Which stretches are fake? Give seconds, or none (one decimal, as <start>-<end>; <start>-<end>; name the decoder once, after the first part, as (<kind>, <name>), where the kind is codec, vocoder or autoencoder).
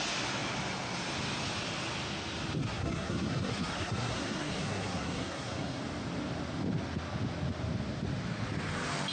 2.6-5.8 (codec, SNAC)